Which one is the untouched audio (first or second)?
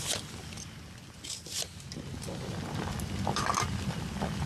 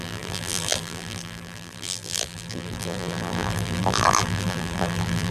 first